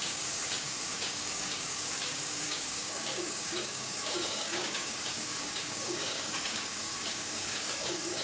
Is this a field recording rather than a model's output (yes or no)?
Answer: no